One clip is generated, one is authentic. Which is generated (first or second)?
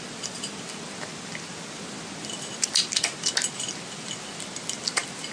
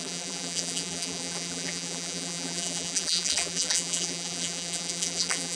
second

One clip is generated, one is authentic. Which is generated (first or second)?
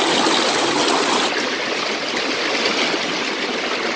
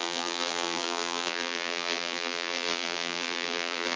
second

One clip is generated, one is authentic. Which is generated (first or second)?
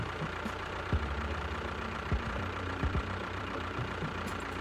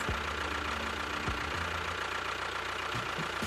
first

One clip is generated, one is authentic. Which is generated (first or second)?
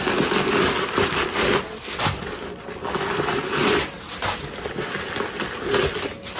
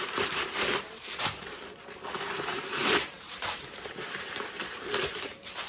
second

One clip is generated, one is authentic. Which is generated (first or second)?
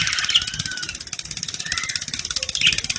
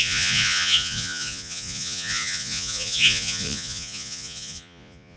second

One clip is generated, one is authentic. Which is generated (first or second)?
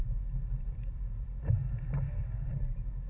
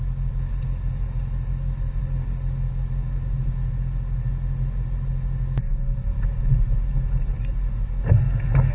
first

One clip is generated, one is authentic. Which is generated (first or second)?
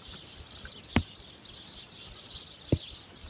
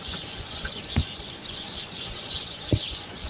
second